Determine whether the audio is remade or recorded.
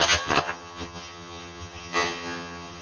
remade